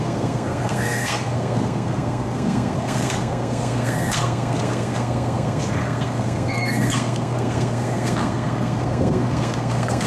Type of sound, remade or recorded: remade